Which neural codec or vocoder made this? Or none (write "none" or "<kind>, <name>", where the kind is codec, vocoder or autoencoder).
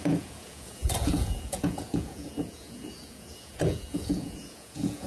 vocoder, Vocos